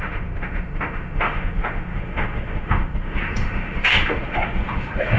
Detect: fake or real fake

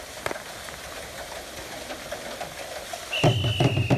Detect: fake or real real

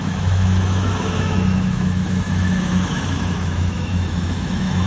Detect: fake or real fake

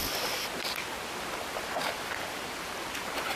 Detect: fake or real real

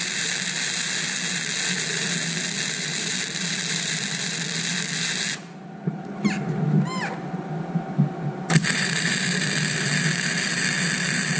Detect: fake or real real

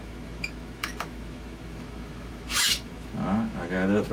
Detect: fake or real fake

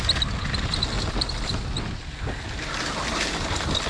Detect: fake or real real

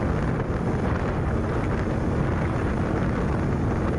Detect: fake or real real